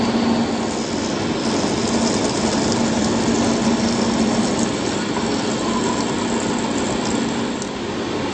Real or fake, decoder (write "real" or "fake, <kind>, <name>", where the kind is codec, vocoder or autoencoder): real